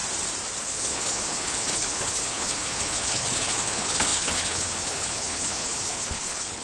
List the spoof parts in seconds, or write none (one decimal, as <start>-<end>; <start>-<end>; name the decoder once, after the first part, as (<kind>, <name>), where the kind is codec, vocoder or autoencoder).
0.6-6.6 (codec, HILCodec)